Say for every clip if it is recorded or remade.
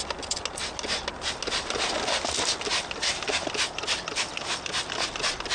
recorded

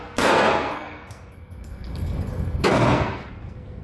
remade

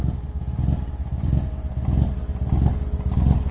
recorded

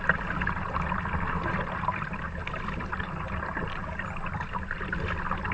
recorded